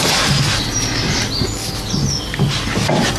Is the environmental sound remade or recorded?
recorded